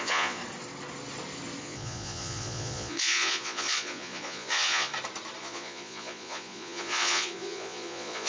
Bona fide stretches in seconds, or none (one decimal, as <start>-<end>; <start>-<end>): 0.4-1.6; 4.9-5.4